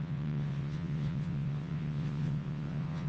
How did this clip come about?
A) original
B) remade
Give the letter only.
B